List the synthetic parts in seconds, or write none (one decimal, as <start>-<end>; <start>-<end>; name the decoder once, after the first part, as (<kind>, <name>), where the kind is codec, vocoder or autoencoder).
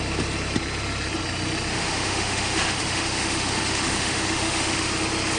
1.7-4.9 (autoencoder, DAC-VAE)